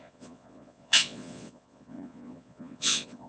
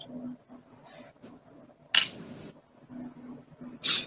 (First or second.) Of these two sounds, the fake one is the first